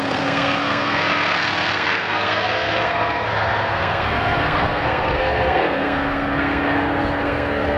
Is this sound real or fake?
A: fake